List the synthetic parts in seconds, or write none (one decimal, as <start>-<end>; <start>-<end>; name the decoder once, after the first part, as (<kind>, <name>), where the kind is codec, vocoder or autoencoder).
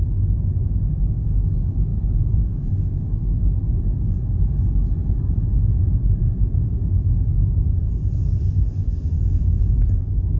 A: 1.9-2.7 (vocoder, Vocos)